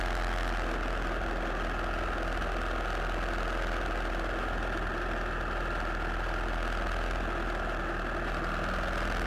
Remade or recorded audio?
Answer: recorded